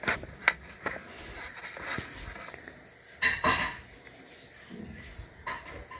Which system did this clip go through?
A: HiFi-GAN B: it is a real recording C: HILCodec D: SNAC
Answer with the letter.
B